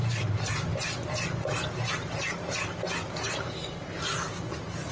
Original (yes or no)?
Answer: yes